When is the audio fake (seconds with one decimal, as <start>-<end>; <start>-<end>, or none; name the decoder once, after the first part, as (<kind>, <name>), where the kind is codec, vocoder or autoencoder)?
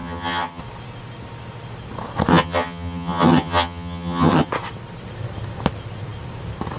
0.0-0.6 (vocoder, HiFi-GAN); 2.3-4.5